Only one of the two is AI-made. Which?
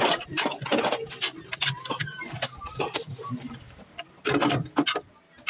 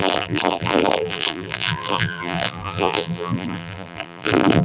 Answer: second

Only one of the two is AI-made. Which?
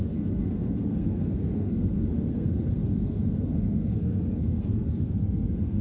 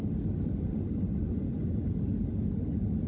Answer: first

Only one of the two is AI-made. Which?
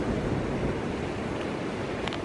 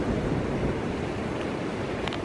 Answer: second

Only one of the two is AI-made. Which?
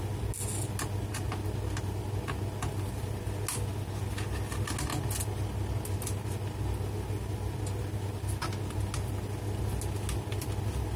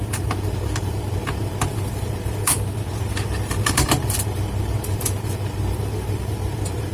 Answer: second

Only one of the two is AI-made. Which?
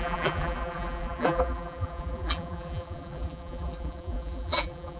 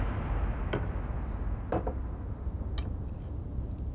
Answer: first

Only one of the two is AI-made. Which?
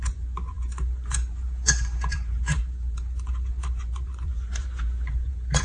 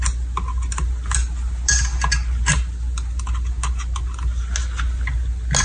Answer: first